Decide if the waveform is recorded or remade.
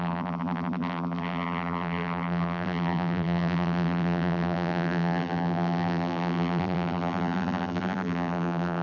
remade